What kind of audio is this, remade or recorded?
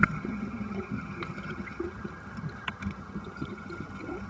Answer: remade